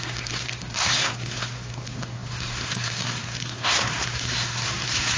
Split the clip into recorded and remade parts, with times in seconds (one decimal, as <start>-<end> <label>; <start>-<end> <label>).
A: 0.0-5.2 remade